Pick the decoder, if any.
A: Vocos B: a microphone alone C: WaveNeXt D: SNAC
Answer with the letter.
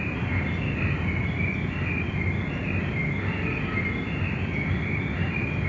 B